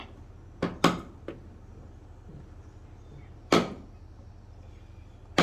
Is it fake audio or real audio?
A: real